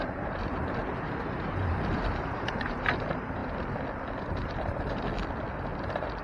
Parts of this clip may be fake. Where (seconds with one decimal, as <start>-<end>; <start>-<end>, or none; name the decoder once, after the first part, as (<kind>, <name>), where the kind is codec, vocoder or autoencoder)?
0.0-3.4 (vocoder, BigVGAN v2); 4.2-5.1; 5.8-6.2